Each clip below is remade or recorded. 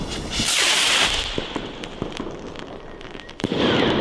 remade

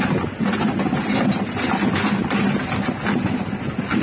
recorded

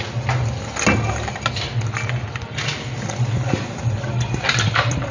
recorded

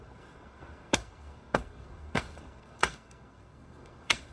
remade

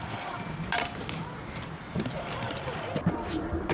recorded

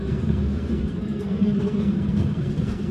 remade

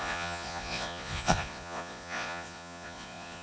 remade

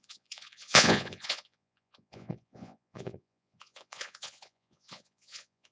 remade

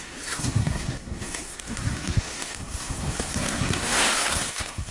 remade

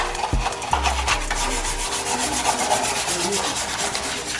recorded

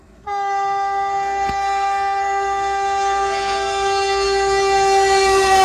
remade